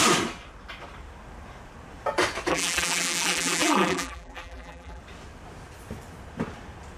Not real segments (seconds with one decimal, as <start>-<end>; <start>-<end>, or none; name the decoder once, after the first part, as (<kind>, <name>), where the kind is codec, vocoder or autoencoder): 2.5-5.0 (vocoder, BigVGAN v2)